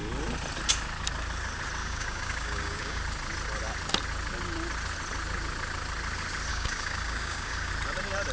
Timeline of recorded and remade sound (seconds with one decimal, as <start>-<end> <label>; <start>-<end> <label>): 0.0-1.8 recorded; 1.8-3.0 remade; 3.0-6.5 recorded; 6.5-7.7 remade; 7.7-8.3 recorded